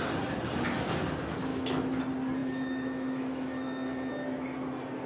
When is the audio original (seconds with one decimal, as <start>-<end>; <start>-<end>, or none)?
0.0-1.5; 2.0-2.4; 4.1-5.1